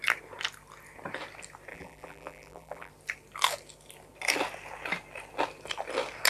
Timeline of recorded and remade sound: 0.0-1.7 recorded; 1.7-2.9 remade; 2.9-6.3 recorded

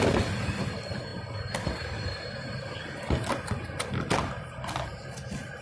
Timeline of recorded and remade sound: 0.0-5.6 recorded

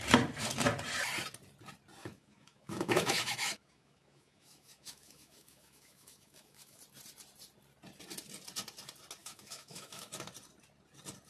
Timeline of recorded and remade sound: 0.0-2.0 recorded; 2.0-6.8 remade; 6.8-9.2 recorded; 9.2-10.1 remade; 10.1-11.3 recorded

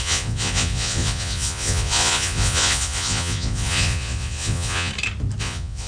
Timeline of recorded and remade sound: 0.0-4.9 remade; 4.9-5.4 recorded; 5.4-5.9 remade

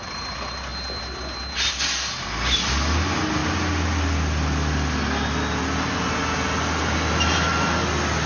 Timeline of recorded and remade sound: 0.0-8.3 recorded